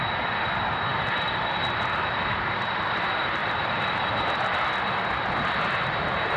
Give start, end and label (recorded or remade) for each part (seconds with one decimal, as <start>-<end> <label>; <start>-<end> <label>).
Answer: 0.0-6.4 recorded